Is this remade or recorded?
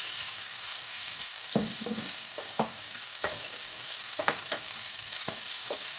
remade